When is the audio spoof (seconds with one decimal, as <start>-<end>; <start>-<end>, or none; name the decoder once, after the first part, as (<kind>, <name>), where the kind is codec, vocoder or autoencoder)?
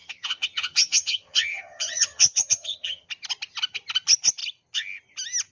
0.0-3.1 (vocoder, HiFi-GAN)